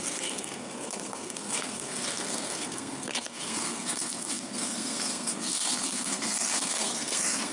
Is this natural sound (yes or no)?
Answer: no